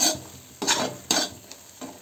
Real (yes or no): yes